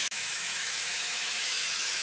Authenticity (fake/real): fake